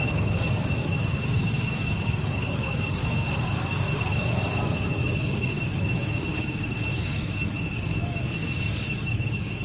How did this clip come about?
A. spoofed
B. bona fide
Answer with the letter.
A